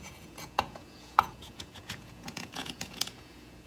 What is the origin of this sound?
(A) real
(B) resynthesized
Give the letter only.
B